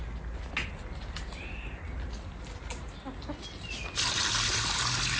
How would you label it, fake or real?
real